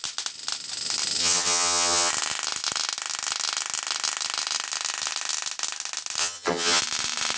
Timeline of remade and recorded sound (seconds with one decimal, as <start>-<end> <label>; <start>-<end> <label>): 0.0-1.2 recorded; 1.2-2.1 remade; 2.1-6.2 recorded; 6.2-6.8 remade; 6.8-7.4 recorded